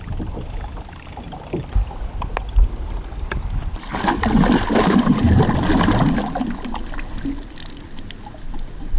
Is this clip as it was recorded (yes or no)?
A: yes